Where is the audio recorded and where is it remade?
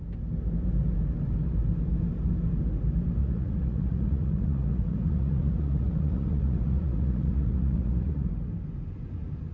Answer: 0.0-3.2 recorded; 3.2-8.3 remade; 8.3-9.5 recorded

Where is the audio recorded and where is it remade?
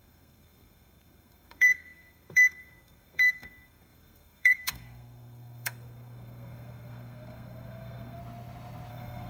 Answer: 0.0-8.2 remade; 8.2-8.9 recorded; 8.9-9.3 remade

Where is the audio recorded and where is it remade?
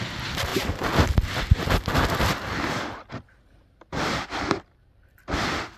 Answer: 0.0-5.8 remade